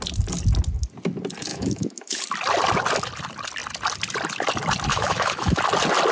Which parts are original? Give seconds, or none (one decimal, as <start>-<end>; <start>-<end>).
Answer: 0.0-1.5; 2.2-4.9; 5.6-6.1